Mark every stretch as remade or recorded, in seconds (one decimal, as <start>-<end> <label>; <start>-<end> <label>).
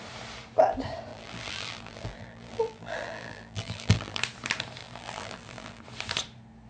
0.0-1.1 recorded; 1.1-4.2 remade; 4.2-4.8 recorded; 4.8-5.8 remade; 5.8-6.7 recorded